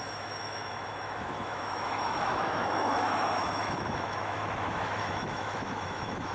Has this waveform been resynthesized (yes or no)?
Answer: yes